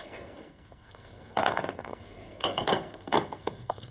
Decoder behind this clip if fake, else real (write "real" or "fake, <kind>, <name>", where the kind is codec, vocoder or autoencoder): fake, codec, SNAC